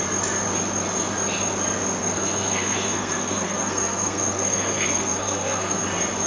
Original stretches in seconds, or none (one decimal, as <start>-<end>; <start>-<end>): 0.0-2.0; 5.8-6.3